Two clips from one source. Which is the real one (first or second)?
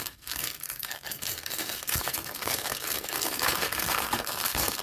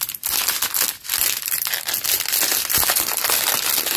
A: second